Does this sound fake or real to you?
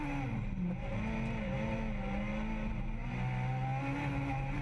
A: real